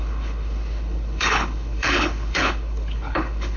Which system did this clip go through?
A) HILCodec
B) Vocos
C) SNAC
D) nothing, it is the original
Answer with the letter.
A